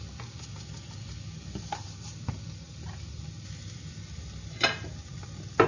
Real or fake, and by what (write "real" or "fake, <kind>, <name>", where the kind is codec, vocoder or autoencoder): real